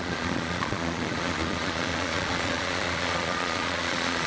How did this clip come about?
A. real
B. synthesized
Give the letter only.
B